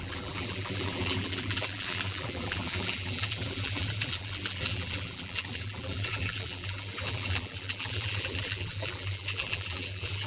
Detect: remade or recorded remade